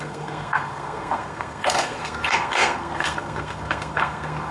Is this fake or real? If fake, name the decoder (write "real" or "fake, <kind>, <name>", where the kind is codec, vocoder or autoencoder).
fake, codec, SNAC